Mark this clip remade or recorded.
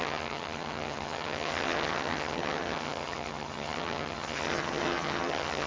remade